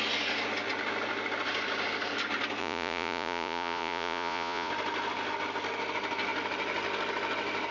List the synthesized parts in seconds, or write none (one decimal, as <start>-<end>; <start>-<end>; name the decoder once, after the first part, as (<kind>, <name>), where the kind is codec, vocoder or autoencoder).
2.6-4.7 (vocoder, Vocos)